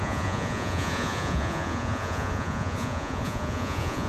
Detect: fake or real fake